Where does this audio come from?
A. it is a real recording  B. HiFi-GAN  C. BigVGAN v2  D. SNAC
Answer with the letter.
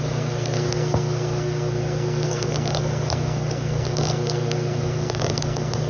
D